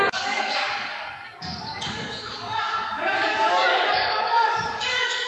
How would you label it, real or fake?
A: fake